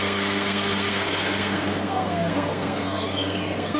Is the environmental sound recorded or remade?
remade